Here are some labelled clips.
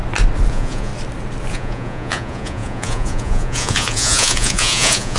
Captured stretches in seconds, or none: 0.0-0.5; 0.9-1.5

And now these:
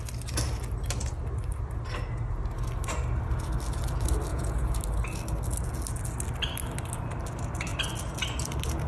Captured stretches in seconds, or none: 0.0-4.3; 4.8-8.9

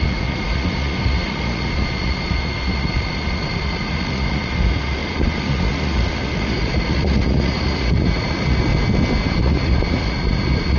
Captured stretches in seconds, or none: 8.7-9.3

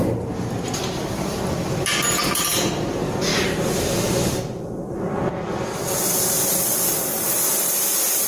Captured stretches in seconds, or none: 0.0-8.3

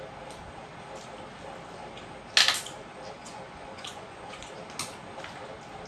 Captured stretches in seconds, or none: 0.0-3.2; 4.5-5.9

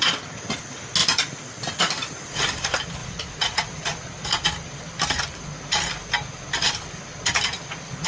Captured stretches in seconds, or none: 0.0-3.0; 4.0-8.1

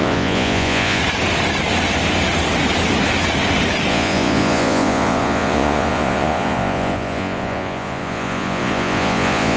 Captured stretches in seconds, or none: 1.0-3.9